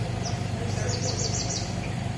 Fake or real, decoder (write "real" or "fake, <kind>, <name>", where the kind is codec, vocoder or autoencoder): fake, vocoder, BigVGAN v2